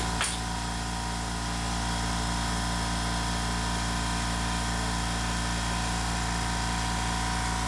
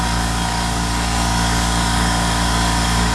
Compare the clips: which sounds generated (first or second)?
second